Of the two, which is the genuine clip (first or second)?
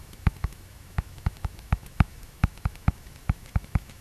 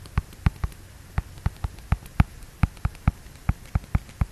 second